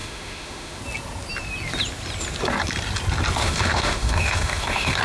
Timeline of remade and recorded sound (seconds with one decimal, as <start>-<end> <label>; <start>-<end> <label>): 0.0-0.8 remade; 0.8-3.4 recorded; 3.4-5.0 remade